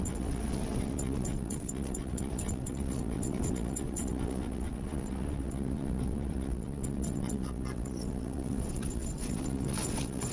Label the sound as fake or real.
fake